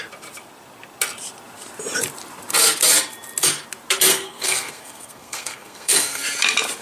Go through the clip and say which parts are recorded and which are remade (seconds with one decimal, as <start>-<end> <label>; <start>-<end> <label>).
0.0-4.1 recorded; 4.1-6.2 remade; 6.2-6.8 recorded